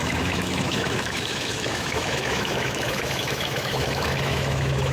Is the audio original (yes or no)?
no